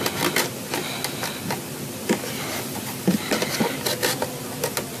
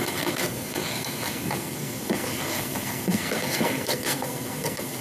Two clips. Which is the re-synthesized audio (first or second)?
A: second